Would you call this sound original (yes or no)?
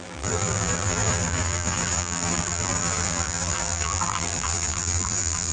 no